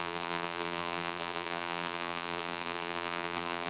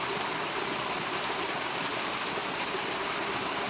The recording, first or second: second